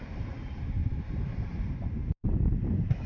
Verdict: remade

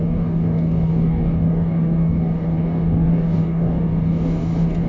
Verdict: remade